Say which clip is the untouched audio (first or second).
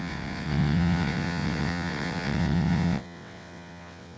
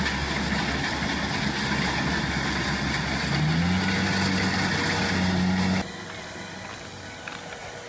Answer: second